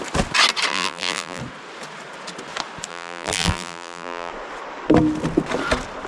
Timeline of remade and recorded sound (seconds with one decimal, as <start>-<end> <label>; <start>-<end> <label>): 0.0-0.7 recorded; 0.7-1.4 remade; 1.4-2.9 recorded; 2.9-4.3 remade; 4.3-6.1 recorded